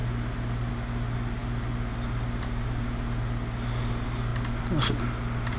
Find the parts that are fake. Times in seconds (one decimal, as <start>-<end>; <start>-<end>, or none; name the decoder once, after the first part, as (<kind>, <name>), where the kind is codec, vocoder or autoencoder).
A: none